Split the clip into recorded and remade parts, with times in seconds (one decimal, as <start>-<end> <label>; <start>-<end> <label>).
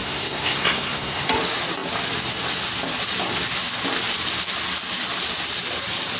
0.0-1.3 remade; 1.3-6.2 recorded